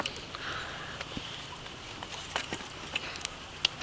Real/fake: real